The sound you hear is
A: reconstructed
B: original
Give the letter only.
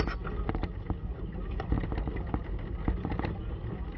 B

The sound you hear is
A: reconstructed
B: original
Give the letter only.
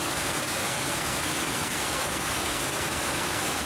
A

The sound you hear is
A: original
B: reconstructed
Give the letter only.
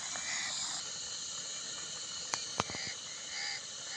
A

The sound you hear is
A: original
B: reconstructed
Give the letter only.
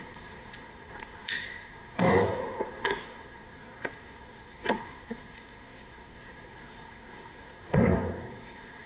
B